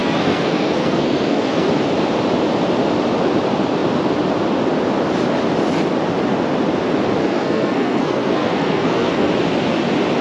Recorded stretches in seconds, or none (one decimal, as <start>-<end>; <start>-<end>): 1.7-7.2; 9.3-10.2